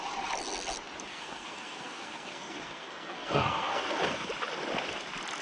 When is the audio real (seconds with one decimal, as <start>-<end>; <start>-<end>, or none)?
0.0-1.1; 4.3-5.4